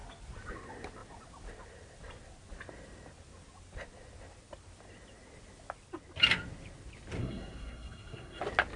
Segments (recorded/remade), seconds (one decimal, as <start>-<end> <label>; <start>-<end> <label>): 0.0-7.2 recorded; 7.2-8.4 remade; 8.4-8.8 recorded